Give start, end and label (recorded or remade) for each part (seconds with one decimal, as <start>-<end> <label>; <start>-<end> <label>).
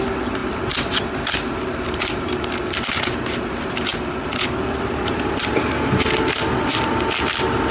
0.0-7.7 recorded